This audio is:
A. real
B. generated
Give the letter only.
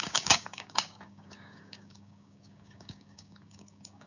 B